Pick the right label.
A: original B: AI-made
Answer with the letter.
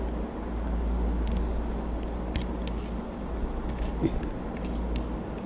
A